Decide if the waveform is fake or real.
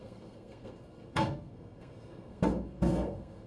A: fake